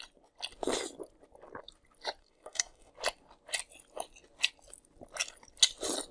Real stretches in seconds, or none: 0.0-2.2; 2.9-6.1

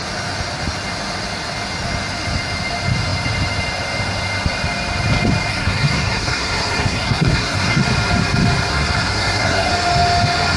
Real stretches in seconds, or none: 0.0-5.5; 7.8-8.7; 9.7-10.6